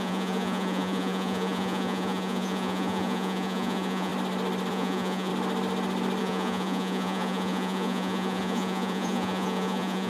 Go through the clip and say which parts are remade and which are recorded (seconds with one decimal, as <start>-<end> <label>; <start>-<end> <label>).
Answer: 0.0-4.1 remade; 4.1-4.7 recorded; 4.7-5.3 remade; 5.3-6.2 recorded; 6.2-10.1 remade